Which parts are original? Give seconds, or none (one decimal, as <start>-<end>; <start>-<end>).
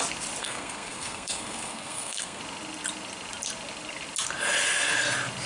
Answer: 0.0-0.4; 2.4-5.5